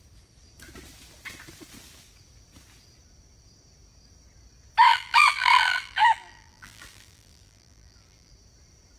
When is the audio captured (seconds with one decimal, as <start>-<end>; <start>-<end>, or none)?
0.0-4.9; 8.3-9.0